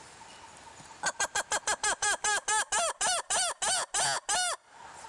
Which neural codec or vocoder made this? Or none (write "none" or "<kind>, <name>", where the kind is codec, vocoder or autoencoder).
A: none